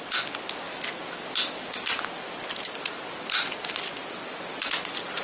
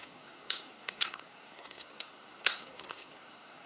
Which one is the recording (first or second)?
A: first